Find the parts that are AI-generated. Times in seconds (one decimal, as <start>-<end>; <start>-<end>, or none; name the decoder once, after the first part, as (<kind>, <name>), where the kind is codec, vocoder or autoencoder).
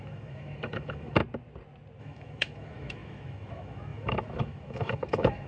0.0-1.2 (autoencoder, DAC-VAE); 2.0-5.5